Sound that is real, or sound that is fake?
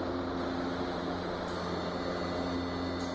real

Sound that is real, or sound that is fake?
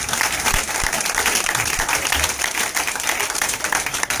fake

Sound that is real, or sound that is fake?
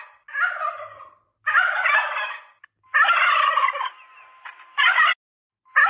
real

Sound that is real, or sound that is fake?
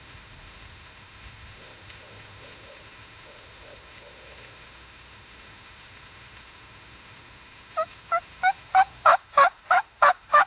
fake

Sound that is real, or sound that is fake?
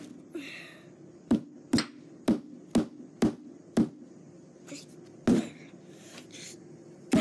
real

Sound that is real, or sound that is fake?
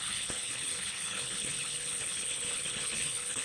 fake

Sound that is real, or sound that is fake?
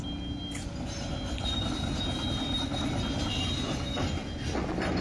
real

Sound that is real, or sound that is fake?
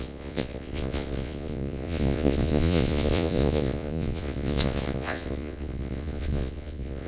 fake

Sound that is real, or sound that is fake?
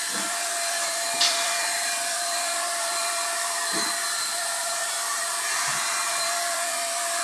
fake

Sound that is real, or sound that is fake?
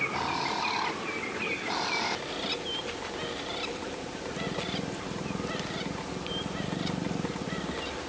real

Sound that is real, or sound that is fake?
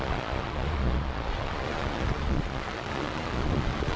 fake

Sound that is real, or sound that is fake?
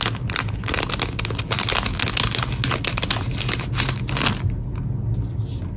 real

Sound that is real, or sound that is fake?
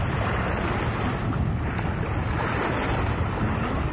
real